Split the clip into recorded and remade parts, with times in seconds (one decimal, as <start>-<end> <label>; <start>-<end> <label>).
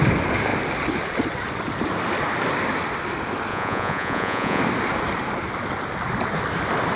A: 0.0-3.5 recorded; 3.5-4.6 remade; 4.6-7.0 recorded